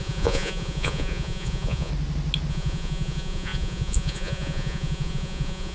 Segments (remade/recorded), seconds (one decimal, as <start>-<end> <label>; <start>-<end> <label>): 0.0-1.9 remade; 1.9-2.5 recorded; 2.5-5.7 remade